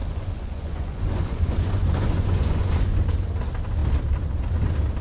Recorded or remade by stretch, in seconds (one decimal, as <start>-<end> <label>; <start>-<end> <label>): 0.0-3.0 remade; 3.0-5.0 recorded